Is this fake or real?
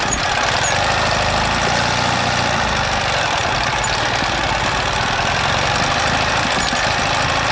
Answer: real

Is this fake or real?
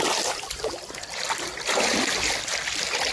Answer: real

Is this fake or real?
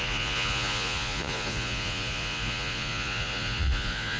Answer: fake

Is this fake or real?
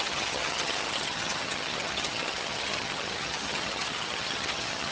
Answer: fake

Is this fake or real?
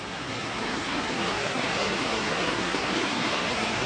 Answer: fake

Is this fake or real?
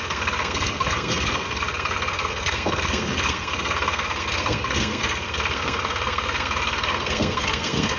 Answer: fake